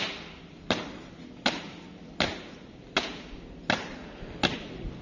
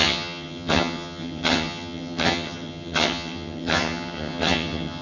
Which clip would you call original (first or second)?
first